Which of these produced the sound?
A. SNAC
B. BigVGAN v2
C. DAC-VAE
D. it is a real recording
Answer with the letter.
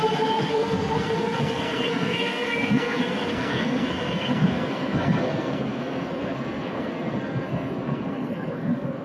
A